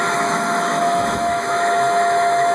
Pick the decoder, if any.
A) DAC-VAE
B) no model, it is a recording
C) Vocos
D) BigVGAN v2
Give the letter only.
A